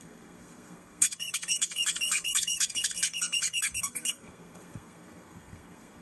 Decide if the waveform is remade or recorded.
remade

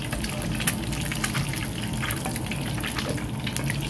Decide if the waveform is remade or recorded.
recorded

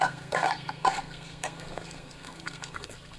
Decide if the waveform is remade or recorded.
remade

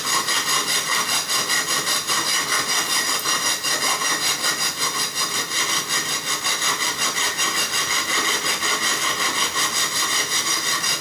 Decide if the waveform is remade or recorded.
recorded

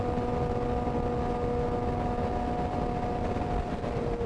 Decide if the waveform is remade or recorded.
recorded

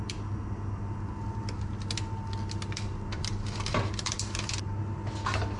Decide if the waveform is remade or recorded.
recorded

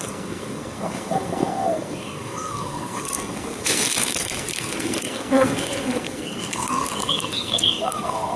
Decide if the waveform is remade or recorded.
remade